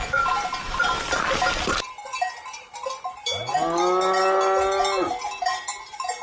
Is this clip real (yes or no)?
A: yes